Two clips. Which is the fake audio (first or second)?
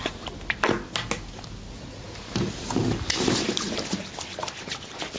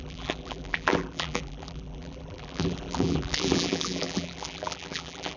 second